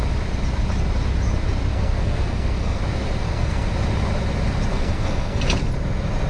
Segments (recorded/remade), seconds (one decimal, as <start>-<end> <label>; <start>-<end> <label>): 0.0-1.7 recorded; 1.7-2.8 remade; 2.8-3.2 recorded; 3.2-3.7 remade; 3.7-4.7 recorded; 4.7-5.4 remade; 5.4-6.3 recorded